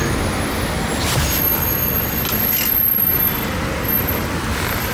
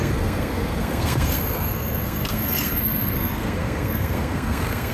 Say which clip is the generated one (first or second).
second